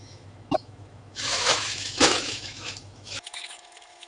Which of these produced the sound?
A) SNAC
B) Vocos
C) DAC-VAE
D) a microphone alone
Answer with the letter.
C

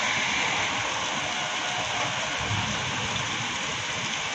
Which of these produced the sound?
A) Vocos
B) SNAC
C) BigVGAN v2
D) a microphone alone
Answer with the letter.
D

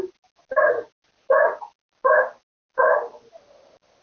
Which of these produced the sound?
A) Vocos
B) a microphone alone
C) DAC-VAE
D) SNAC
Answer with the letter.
B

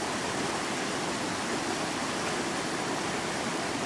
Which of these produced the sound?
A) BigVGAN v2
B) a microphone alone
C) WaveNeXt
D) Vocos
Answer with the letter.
B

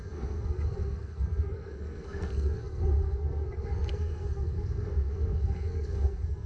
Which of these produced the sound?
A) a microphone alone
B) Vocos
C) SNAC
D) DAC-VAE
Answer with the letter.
C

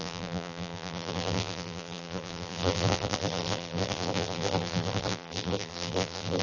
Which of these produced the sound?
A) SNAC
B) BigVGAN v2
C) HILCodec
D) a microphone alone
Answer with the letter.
B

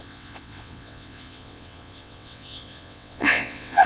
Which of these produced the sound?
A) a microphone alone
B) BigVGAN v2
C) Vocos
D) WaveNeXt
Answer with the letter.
D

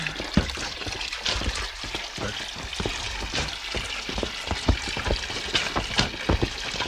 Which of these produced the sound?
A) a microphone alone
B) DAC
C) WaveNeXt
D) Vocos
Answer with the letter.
A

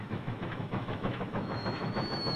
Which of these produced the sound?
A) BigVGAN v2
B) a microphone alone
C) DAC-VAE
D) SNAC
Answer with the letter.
C